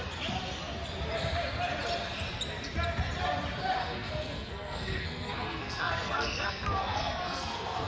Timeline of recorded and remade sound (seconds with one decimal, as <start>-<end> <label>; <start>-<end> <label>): 0.0-3.8 recorded; 3.8-7.9 remade